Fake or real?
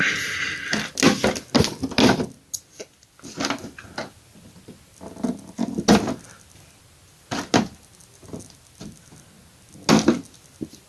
real